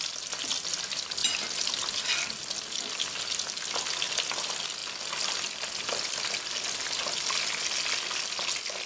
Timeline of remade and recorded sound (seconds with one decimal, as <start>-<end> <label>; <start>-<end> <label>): 0.0-8.9 recorded